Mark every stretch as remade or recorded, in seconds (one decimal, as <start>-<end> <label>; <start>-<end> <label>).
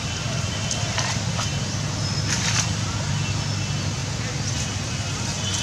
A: 0.0-5.6 recorded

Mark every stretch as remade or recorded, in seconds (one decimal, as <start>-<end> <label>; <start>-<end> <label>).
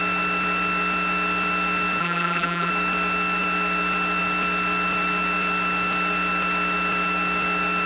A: 0.0-2.0 recorded; 2.0-2.7 remade; 2.7-7.9 recorded